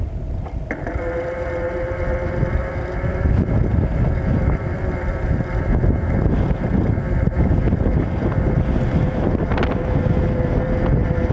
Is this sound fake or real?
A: real